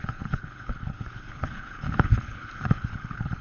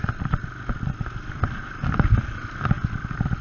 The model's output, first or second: first